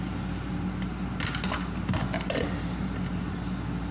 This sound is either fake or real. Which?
real